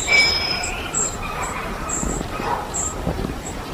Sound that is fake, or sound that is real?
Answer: fake